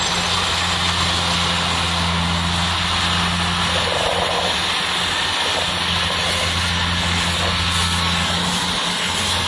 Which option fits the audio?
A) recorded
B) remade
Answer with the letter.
A